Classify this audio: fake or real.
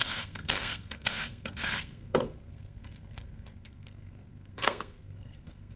fake